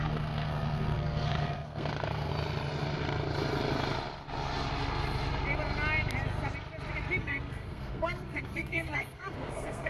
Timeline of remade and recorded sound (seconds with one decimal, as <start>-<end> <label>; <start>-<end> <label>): 0.0-2.3 remade; 2.3-7.2 recorded; 7.2-9.9 remade